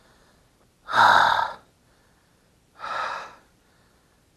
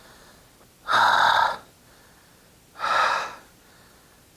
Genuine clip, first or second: second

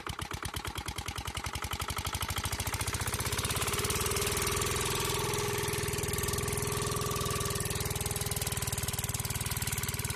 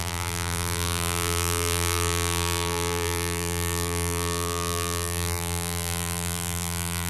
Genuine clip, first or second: first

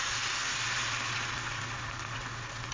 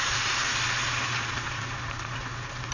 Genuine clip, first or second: first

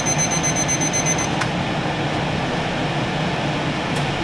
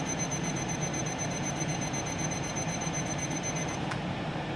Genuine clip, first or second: first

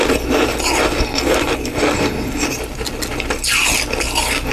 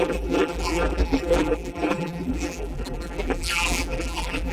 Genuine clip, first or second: first